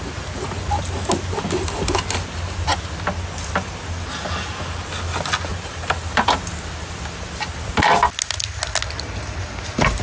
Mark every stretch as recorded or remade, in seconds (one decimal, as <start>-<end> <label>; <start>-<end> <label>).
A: 0.0-5.5 recorded; 5.5-6.5 remade; 6.5-10.0 recorded